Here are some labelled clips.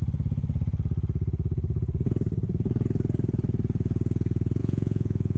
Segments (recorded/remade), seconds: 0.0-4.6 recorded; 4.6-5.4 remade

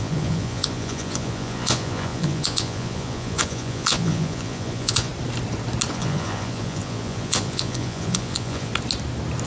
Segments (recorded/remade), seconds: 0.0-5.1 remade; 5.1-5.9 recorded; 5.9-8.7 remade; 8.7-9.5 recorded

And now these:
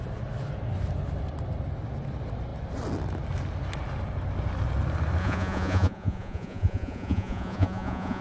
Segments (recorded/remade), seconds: 0.0-5.2 recorded; 5.2-8.2 remade